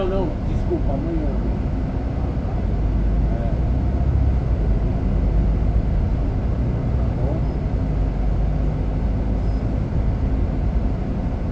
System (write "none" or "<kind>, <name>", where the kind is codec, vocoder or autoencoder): none